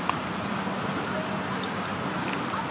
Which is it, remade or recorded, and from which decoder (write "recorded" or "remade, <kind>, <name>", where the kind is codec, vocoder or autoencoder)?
recorded